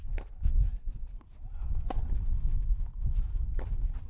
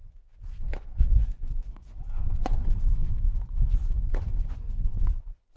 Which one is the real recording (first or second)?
first